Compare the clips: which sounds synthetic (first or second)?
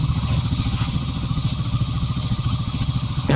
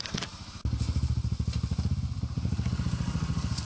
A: first